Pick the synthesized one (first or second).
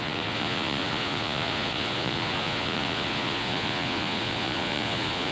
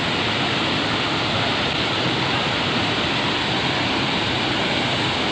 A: first